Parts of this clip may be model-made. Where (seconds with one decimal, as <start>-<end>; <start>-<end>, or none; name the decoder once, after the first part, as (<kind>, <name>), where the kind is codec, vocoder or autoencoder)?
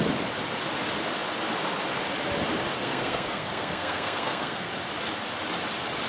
2.8-4.7 (codec, SNAC)